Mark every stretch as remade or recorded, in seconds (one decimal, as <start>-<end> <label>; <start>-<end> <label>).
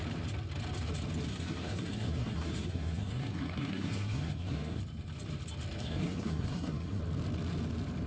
0.0-1.3 recorded; 1.3-4.8 remade; 4.8-5.8 recorded; 5.8-7.0 remade; 7.0-8.1 recorded